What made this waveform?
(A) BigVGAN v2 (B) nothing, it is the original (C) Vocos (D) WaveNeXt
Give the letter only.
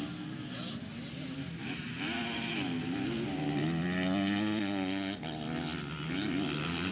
B